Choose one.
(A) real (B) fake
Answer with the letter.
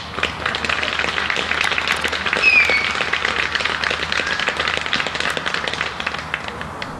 A